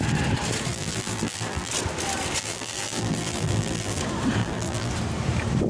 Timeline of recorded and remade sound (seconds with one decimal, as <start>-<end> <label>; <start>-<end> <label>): 0.0-0.7 recorded; 0.7-1.7 remade; 1.7-2.4 recorded; 2.4-4.0 remade; 4.0-4.4 recorded; 4.4-4.9 remade; 4.9-5.7 recorded